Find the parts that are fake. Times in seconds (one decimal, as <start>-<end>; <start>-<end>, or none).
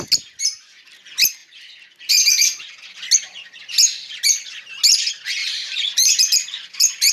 5.4-7.1